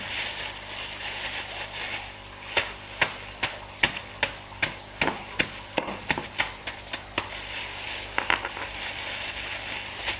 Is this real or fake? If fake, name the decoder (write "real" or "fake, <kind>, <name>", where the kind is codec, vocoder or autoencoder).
real